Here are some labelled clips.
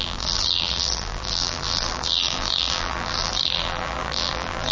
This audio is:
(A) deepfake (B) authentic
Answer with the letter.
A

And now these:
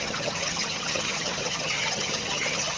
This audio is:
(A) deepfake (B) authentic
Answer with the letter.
A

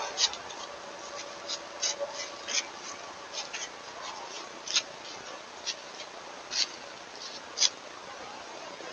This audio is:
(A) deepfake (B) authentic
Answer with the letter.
B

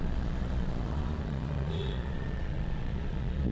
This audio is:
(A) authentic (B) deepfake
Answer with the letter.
B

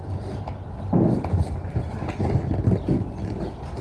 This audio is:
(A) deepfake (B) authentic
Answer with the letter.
B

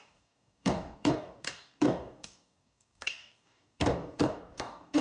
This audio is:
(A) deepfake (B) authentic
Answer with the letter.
A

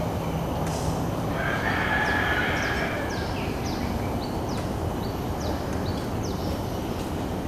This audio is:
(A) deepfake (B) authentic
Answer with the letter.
B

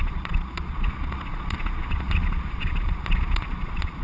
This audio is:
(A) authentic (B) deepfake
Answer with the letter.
B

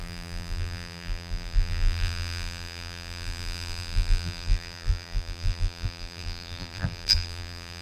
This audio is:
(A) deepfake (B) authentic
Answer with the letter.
A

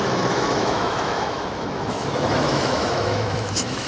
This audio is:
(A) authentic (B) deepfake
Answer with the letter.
B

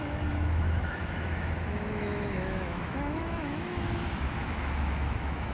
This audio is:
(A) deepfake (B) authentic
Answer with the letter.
A